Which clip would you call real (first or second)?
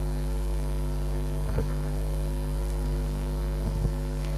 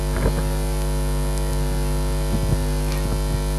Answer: second